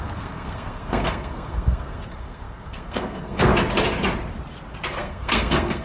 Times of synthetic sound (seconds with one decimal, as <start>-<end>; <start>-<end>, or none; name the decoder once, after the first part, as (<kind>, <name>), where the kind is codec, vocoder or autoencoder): 0.0-3.5 (codec, SNAC); 5.0-5.8